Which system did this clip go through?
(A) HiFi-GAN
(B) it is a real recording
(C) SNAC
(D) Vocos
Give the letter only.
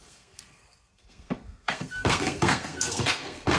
C